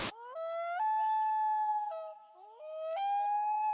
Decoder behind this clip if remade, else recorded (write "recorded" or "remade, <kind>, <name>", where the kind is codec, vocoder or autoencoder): remade, autoencoder, DAC-VAE